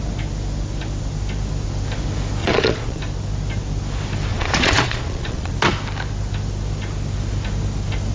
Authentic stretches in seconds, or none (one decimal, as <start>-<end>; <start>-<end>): 0.0-2.4; 3.0-4.3; 5.5-8.1